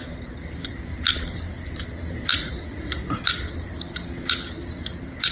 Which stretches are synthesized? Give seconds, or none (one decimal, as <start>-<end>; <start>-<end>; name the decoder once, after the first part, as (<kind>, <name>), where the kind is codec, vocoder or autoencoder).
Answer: 2.3-3.2 (vocoder, Vocos)